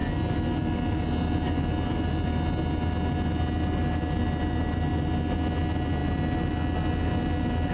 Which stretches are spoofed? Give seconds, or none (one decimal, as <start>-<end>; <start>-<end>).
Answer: none